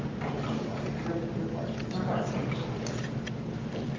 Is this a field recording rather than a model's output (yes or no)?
yes